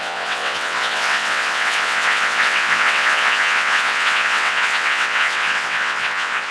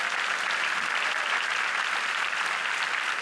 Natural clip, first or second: second